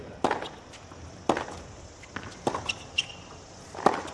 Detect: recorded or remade recorded